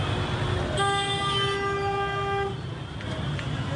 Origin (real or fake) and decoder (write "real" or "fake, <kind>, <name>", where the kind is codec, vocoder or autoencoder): real